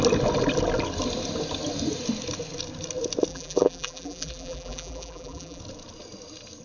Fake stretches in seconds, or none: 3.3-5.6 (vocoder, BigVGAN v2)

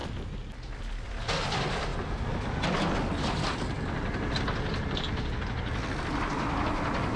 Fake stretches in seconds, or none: none